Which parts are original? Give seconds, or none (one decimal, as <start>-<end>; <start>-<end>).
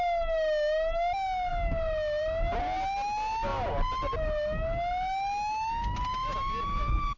0.0-7.2